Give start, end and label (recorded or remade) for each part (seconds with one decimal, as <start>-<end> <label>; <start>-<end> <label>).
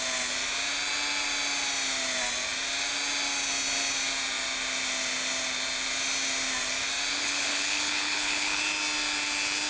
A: 0.0-7.1 recorded; 7.1-8.6 remade; 8.6-9.7 recorded